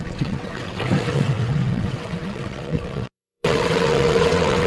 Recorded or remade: remade